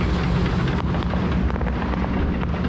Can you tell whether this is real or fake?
real